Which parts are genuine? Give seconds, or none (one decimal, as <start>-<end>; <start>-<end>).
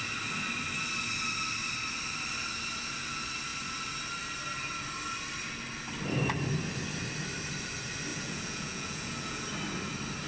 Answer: 0.0-8.1; 9.4-10.3